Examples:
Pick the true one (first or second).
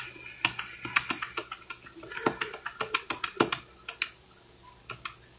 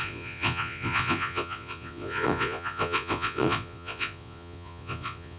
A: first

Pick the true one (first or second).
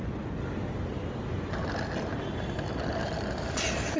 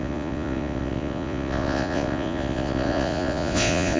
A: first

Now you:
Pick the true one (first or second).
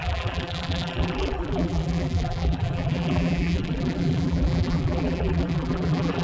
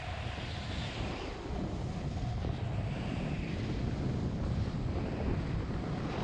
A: second